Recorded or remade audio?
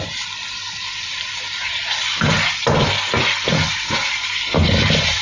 recorded